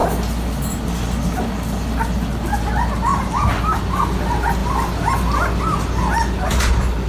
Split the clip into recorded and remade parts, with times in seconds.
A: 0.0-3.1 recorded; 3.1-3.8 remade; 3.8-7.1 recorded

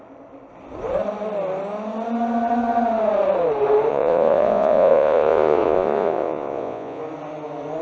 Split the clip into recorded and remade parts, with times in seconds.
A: 0.0-3.9 recorded; 3.9-7.0 remade; 7.0-7.8 recorded